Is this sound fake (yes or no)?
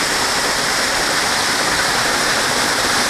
no